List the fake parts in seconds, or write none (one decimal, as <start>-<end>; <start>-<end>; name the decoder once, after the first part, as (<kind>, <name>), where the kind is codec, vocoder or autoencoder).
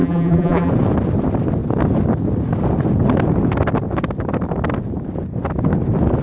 0.0-0.7 (vocoder, BigVGAN v2)